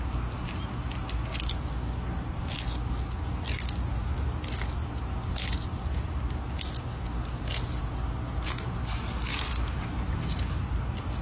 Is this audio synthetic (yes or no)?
no